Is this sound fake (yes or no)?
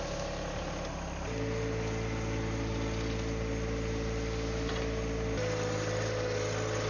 no